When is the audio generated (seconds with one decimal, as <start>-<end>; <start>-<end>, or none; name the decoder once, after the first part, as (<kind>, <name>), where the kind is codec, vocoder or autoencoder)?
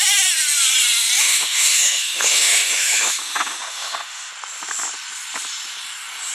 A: 1.2-4.3 (autoencoder, DAC-VAE)